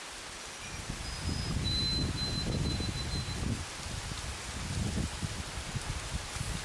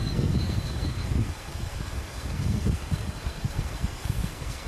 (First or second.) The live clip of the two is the first